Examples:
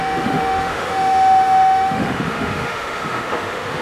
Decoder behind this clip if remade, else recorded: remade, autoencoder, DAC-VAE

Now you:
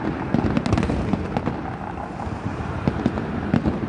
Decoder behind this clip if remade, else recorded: recorded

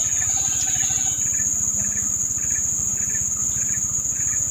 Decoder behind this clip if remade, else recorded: recorded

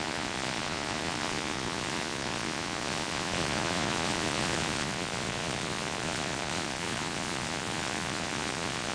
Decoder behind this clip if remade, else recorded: remade, vocoder, Vocos